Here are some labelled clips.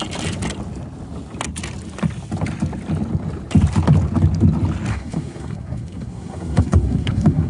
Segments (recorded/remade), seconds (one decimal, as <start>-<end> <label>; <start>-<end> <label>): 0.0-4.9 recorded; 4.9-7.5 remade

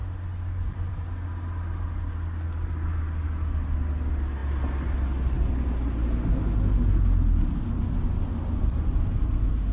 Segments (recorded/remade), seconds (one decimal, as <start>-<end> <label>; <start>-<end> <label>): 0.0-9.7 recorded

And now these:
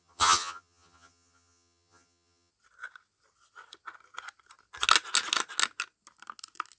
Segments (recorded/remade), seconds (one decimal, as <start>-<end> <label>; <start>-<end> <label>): 0.0-2.5 remade; 2.5-6.8 recorded